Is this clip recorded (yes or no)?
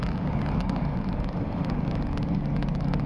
no